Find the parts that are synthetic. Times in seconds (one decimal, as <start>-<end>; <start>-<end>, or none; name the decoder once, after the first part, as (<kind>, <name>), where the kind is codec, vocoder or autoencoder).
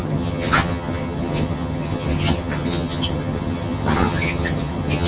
0.0-5.1 (vocoder, HiFi-GAN)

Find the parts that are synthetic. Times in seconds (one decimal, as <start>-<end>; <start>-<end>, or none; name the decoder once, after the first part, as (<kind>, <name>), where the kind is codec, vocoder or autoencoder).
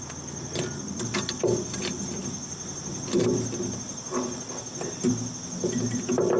none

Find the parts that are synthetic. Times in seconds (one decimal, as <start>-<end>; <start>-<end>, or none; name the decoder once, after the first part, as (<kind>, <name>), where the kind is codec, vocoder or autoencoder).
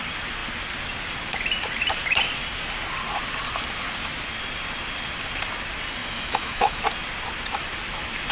6.0-6.8 (autoencoder, DAC-VAE)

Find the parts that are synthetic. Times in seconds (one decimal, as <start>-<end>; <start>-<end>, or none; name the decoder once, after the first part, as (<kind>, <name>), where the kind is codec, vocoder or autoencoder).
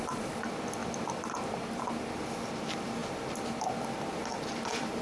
none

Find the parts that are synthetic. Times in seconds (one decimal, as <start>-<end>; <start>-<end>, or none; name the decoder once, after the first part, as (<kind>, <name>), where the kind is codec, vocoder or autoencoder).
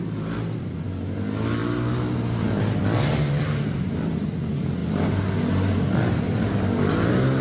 none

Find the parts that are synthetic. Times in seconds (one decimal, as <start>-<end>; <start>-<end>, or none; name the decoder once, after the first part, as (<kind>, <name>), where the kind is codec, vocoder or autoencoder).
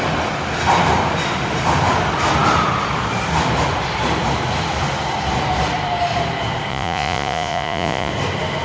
6.7-8.1 (vocoder, Vocos)